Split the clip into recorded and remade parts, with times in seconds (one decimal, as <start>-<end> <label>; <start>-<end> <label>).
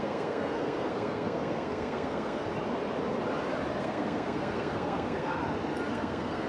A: 0.0-2.5 remade; 2.5-3.8 recorded; 3.8-5.4 remade; 5.4-5.9 recorded; 5.9-6.5 remade